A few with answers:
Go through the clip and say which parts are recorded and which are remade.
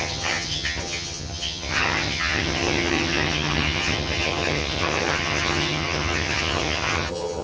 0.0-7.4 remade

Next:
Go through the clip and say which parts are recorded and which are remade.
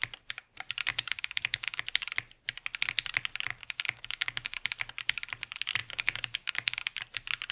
0.0-0.9 recorded; 0.9-1.8 remade; 1.8-3.5 recorded; 3.5-4.6 remade; 4.6-5.8 recorded; 5.8-7.0 remade; 7.0-7.5 recorded